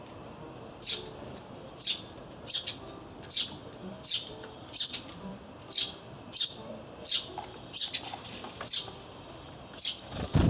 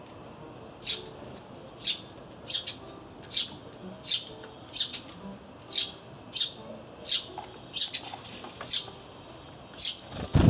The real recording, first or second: second